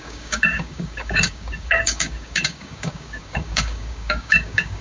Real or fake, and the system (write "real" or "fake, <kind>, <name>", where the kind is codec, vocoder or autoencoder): fake, codec, DAC